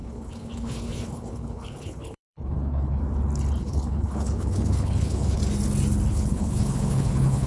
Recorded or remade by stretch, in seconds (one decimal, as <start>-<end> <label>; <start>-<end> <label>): 0.0-3.0 remade; 3.0-3.6 recorded; 3.6-5.4 remade; 5.4-6.1 recorded; 6.1-7.5 remade

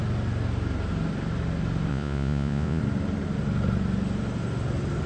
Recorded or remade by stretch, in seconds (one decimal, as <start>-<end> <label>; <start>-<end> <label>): 0.0-1.9 recorded; 1.9-2.8 remade; 2.8-5.1 recorded

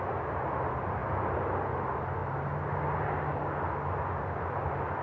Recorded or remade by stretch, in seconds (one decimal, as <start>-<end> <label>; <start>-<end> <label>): 0.0-5.0 recorded

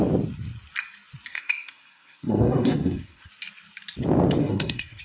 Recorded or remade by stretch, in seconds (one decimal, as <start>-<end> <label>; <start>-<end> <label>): 0.0-1.3 recorded; 1.3-3.3 remade; 3.3-4.4 recorded; 4.4-5.0 remade